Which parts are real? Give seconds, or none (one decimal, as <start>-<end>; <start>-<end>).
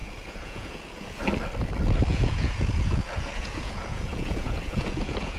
1.2-2.1